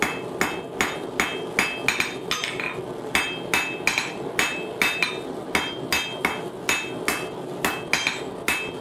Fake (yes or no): no